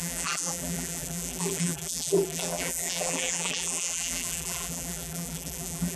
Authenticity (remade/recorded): remade